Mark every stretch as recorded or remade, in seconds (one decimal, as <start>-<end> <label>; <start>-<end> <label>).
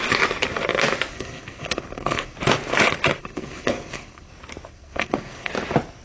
0.0-1.1 recorded; 1.1-2.4 remade; 2.4-3.2 recorded; 3.2-4.3 remade; 4.3-4.7 recorded; 4.7-5.5 remade; 5.5-6.0 recorded